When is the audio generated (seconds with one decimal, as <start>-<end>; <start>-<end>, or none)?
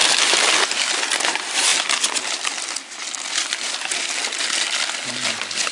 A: none